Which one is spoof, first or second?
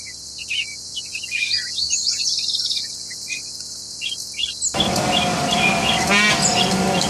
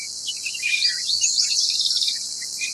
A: second